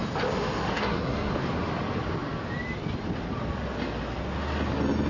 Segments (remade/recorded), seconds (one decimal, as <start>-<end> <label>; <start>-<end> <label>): 0.0-0.7 recorded; 0.7-1.3 remade; 1.3-5.1 recorded